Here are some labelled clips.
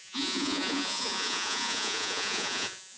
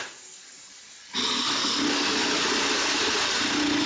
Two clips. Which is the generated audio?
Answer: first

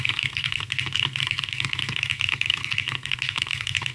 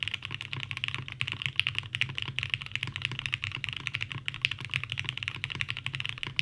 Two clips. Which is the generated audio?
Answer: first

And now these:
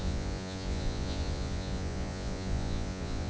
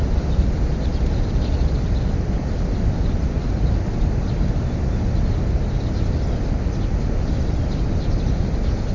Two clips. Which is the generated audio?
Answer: first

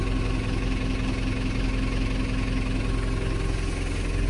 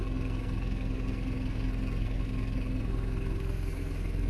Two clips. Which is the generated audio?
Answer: second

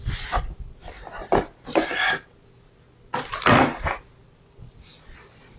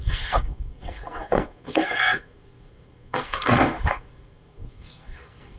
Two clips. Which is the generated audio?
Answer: second